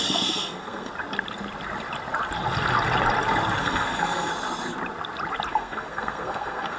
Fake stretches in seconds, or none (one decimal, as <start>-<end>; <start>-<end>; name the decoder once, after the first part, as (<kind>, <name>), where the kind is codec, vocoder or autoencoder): 0.0-0.9 (codec, SNAC); 3.6-4.3; 5.5-6.8

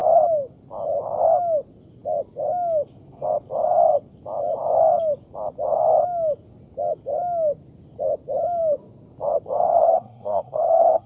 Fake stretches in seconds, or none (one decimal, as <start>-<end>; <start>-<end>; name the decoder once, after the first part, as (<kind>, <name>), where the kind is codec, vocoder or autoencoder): 9.8-11.1 (codec, SNAC)

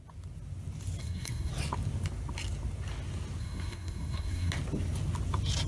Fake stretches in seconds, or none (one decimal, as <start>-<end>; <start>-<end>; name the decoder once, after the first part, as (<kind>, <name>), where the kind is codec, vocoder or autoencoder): 1.0-1.5 (codec, SNAC); 3.4-4.5

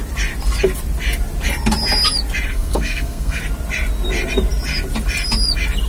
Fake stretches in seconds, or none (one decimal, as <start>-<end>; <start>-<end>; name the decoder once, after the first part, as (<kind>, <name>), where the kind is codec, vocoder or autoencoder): 2.5-3.4 (codec, SNAC)

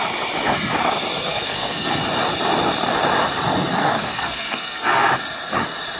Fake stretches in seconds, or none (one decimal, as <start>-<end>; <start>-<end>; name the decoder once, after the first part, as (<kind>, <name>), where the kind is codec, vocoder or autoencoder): 1.3-2.0 (codec, SNAC); 3.8-5.1

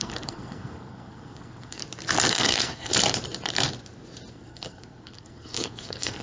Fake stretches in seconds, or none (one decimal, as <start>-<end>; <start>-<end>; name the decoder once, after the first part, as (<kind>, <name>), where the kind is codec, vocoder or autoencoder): 0.0-1.8 (codec, SNAC); 2.3-2.9; 4.3-6.2

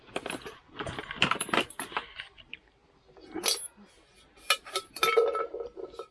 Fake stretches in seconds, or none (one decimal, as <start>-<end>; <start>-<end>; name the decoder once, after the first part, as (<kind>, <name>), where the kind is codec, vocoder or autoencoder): none

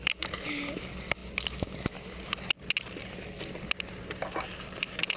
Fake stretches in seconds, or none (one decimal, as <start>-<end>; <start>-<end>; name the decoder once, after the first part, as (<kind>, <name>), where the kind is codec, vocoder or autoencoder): none